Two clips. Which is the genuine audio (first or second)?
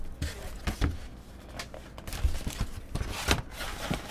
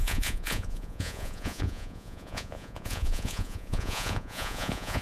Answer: first